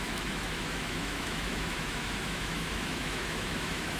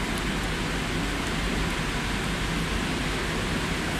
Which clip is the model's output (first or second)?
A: first